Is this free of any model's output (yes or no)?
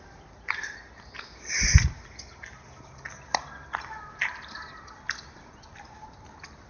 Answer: yes